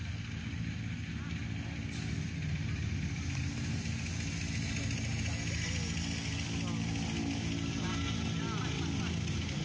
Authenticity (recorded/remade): recorded